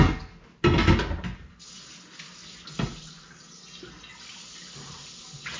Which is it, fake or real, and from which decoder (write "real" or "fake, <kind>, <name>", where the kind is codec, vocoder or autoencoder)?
real